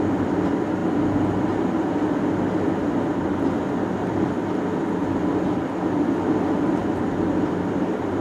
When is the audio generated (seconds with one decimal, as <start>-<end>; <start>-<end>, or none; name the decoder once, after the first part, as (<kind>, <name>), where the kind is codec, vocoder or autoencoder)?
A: none